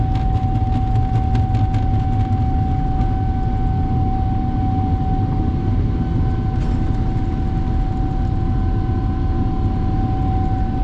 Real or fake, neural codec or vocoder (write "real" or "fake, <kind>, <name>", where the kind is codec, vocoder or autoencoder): real